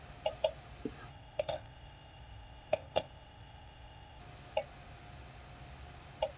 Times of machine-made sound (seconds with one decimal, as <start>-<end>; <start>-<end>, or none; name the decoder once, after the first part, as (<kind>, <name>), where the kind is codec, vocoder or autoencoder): 1.1-4.2 (codec, ZipCodec)